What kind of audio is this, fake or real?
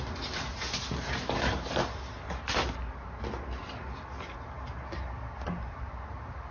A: real